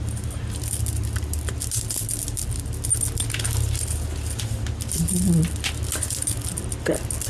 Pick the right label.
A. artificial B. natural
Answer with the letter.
B